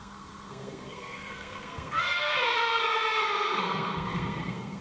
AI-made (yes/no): yes